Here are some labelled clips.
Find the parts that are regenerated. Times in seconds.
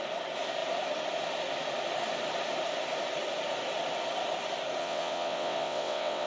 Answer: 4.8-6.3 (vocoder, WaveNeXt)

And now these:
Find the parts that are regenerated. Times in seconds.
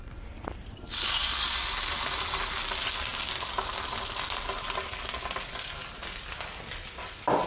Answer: none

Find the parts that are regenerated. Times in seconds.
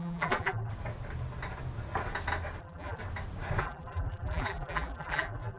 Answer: 0.0-0.7 (vocoder, BigVGAN v2); 2.6-3.0; 3.6-5.6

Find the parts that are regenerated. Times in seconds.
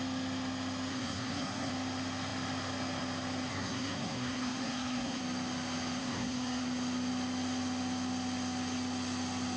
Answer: 0.9-1.7 (codec, SNAC); 3.5-5.2; 6.0-6.6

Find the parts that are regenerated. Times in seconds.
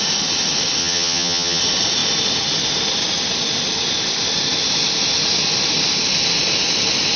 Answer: 0.8-1.6 (vocoder, HiFi-GAN)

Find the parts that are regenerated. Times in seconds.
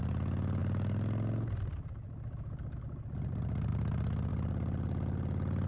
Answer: none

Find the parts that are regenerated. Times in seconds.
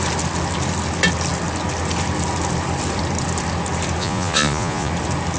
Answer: 4.0-4.9 (vocoder, Vocos)